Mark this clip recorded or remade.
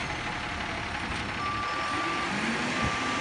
recorded